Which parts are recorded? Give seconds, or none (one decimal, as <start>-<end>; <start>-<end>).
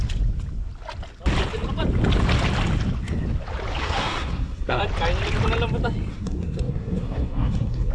0.0-3.8; 4.8-6.1